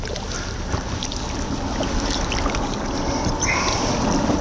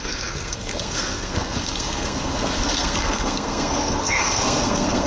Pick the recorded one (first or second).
first